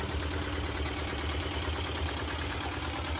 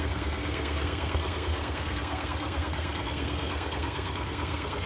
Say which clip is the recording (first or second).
first